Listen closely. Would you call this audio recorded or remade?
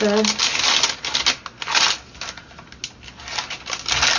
recorded